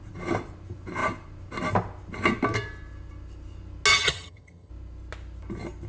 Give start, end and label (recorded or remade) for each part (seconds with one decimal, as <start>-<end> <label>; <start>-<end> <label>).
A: 0.0-3.9 recorded; 3.9-4.7 remade; 4.7-5.9 recorded